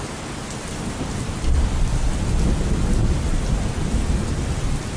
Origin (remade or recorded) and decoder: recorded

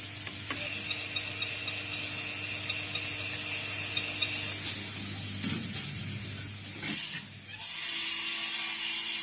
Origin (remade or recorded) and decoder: recorded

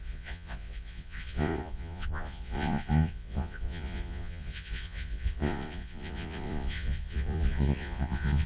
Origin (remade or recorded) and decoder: remade, vocoder, Vocos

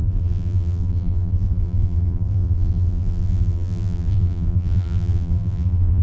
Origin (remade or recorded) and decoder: remade, vocoder, BigVGAN v2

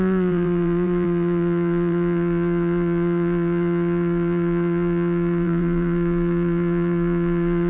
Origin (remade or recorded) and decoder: remade, vocoder, BigVGAN v2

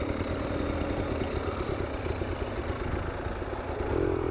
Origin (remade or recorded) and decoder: recorded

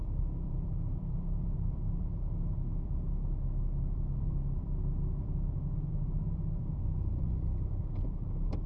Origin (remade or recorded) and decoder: remade, vocoder, BigVGAN v2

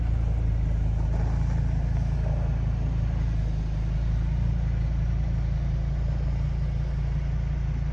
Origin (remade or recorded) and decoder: recorded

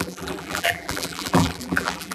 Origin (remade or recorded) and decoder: remade, vocoder, BigVGAN v2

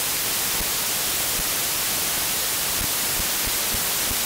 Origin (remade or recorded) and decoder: recorded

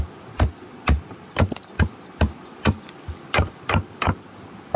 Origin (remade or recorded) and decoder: recorded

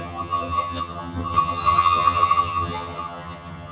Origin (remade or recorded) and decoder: remade, vocoder, HiFi-GAN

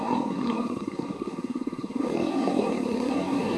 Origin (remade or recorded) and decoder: remade, codec, SNAC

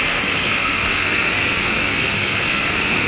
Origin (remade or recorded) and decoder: remade, codec, SNAC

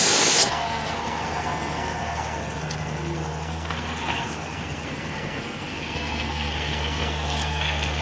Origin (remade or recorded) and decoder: remade, codec, SNAC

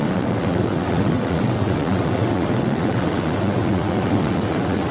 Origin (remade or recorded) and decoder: remade, vocoder, WaveNeXt